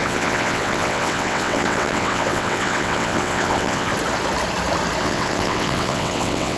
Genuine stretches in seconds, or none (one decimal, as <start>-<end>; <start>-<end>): 3.9-5.0